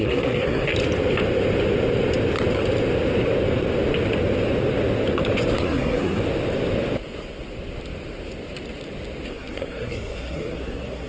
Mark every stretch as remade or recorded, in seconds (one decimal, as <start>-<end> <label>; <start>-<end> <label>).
0.0-0.7 remade; 0.7-5.6 recorded; 5.6-6.2 remade; 6.2-9.3 recorded; 9.3-11.1 remade